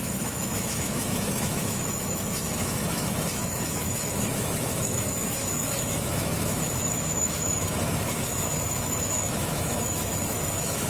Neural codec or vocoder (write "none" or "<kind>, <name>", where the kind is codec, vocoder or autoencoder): autoencoder, DAC-VAE